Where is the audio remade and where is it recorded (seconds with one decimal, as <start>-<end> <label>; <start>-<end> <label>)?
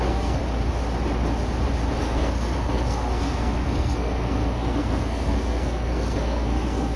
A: 0.0-0.4 remade; 0.4-2.0 recorded; 2.0-7.0 remade